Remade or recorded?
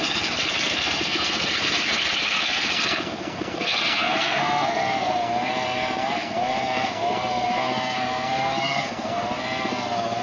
remade